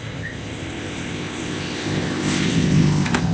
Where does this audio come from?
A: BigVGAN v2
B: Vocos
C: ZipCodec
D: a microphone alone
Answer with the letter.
C